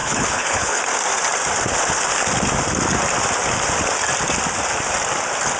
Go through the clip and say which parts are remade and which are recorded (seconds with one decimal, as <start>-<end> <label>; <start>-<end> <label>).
0.0-0.8 remade; 0.8-5.6 recorded